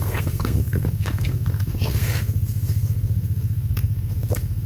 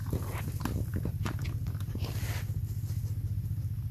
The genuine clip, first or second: second